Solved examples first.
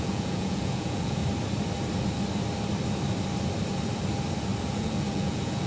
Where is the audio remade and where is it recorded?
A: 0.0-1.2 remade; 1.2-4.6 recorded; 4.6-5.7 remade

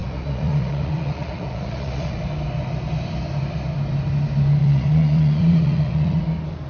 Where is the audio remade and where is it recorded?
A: 0.0-2.2 remade; 2.2-4.6 recorded; 4.6-6.2 remade; 6.2-6.7 recorded

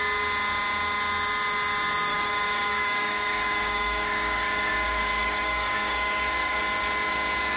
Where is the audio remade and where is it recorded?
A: 0.0-2.1 recorded; 2.1-6.6 remade; 6.6-7.6 recorded

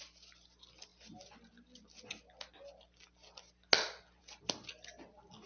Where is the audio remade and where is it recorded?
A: 0.0-5.5 recorded

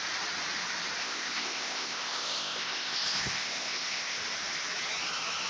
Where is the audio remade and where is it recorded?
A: 0.0-1.0 recorded; 1.0-4.2 remade; 4.2-5.5 recorded